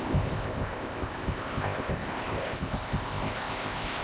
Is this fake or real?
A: fake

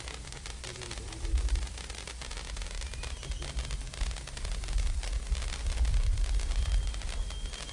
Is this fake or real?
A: real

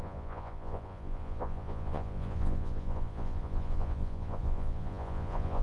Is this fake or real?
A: fake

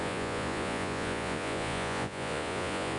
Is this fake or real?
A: fake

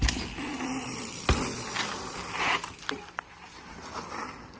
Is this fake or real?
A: real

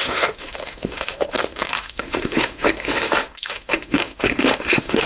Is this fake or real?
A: fake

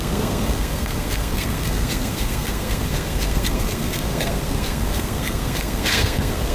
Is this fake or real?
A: fake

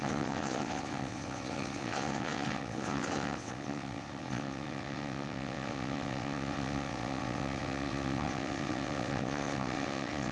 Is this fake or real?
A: fake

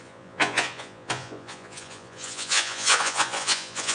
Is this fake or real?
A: fake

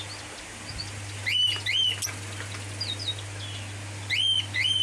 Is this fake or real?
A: real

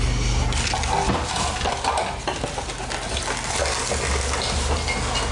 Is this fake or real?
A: real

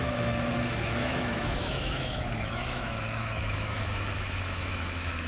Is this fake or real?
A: fake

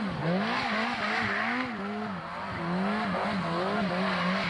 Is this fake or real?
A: real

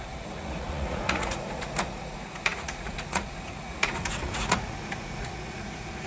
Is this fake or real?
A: fake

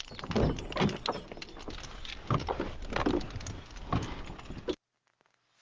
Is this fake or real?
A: real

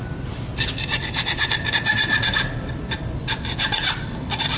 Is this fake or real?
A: real